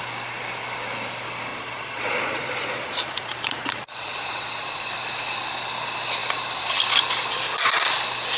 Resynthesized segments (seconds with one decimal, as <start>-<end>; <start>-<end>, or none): 1.5-4.9